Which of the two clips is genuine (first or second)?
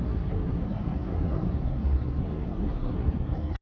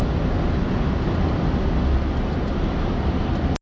second